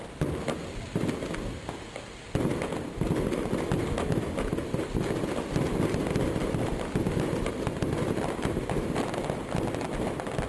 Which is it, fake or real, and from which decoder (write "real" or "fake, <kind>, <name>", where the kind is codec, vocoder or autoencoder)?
real